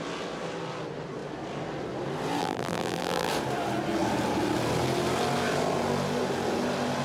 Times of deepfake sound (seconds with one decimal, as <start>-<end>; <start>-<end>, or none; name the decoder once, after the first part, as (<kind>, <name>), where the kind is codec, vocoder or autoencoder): 2.4-3.3 (vocoder, BigVGAN v2)

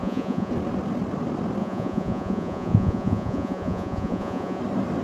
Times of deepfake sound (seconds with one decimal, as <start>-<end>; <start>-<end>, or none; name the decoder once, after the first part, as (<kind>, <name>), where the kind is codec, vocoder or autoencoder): 0.0-0.5 (vocoder, Vocos); 1.6-4.6

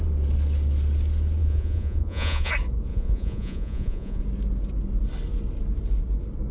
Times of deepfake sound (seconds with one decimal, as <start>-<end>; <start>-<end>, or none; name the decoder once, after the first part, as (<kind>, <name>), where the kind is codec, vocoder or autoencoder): 1.4-2.5 (vocoder, Vocos); 2.9-4.2

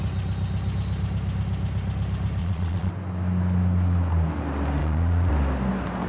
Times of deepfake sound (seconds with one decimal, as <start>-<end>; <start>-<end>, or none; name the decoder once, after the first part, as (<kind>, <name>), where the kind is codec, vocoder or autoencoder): 2.4-2.9 (vocoder, Vocos); 4.8-5.3

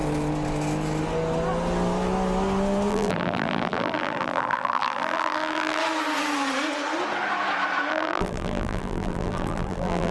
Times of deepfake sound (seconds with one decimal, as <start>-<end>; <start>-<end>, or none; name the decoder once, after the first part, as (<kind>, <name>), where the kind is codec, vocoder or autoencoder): 2.9-5.8 (vocoder, BigVGAN v2); 7.9-10.1